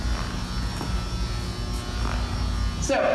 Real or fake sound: real